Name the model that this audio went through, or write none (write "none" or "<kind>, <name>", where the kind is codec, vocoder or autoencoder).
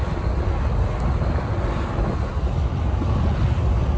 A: none